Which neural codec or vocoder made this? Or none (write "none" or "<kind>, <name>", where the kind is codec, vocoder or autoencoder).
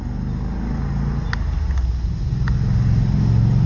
none